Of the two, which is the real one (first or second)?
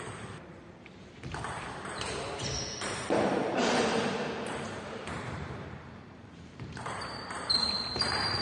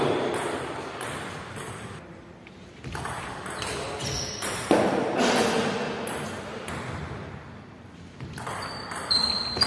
second